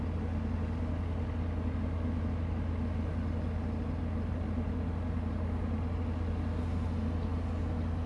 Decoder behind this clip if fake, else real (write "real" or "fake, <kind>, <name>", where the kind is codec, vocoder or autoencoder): real